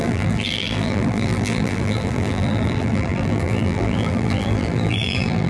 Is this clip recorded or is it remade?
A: remade